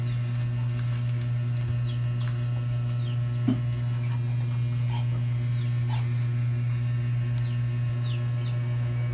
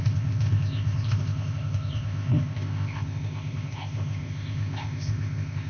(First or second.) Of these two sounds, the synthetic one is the second